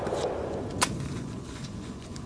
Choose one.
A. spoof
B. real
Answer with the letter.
A